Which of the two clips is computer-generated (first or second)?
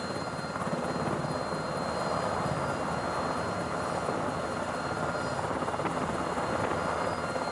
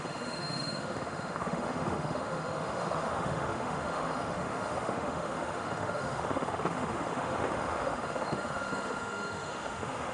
second